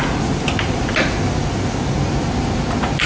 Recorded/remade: recorded